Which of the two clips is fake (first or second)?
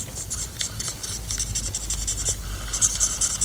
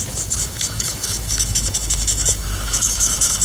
second